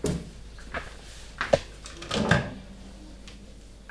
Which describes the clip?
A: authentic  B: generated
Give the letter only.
A